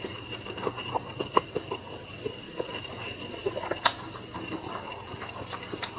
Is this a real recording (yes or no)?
no